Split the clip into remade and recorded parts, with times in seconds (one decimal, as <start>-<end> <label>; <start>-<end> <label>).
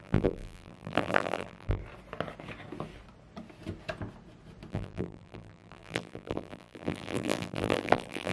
0.0-1.8 remade; 1.8-4.7 recorded; 4.7-8.3 remade